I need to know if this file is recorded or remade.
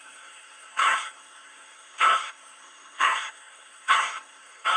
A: remade